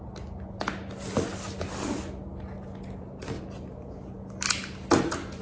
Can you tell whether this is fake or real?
real